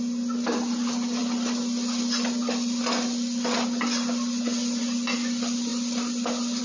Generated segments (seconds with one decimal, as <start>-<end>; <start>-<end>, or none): none